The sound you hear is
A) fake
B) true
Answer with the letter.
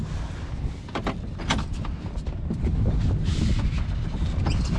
B